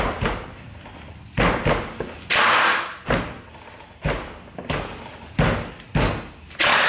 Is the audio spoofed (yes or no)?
no